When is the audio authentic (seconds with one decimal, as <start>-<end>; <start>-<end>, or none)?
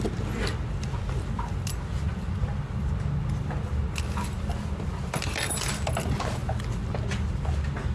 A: 0.0-7.9